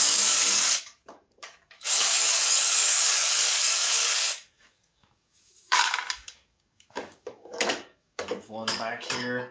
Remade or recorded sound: remade